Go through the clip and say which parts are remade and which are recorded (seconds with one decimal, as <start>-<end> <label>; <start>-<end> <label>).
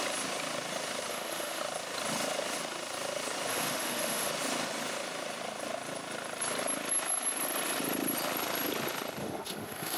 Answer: 0.0-1.1 recorded; 1.1-1.6 remade; 1.6-3.5 recorded; 3.5-4.3 remade; 4.3-9.2 recorded; 9.2-10.0 remade